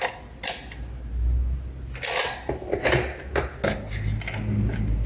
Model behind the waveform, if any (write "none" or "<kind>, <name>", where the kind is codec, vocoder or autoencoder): none